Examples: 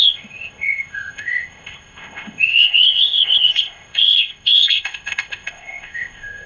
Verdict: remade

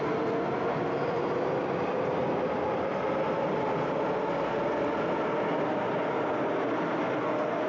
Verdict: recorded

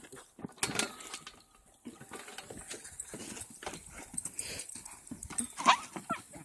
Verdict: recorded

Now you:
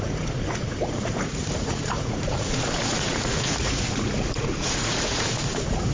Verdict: remade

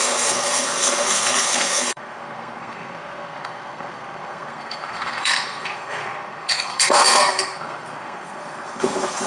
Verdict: remade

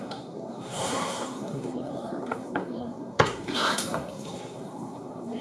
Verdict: remade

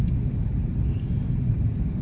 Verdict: recorded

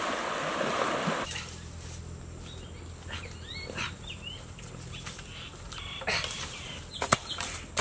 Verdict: recorded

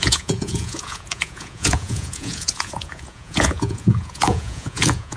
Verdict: remade